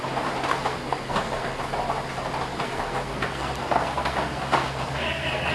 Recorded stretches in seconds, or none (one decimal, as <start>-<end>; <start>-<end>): 0.0-0.5; 1.6-2.5